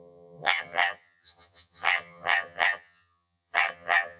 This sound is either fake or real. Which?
fake